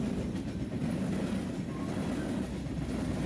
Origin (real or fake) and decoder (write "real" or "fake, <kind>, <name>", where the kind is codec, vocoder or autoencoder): real